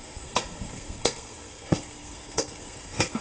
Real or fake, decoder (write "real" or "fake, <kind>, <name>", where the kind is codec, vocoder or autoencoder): fake, codec, SNAC